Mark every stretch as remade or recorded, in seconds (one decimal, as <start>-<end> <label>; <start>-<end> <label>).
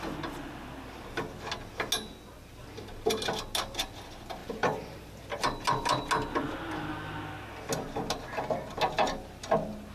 0.0-4.4 recorded; 4.4-5.0 remade; 5.0-9.9 recorded